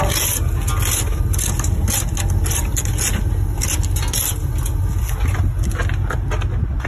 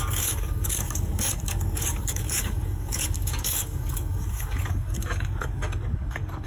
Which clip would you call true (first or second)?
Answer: first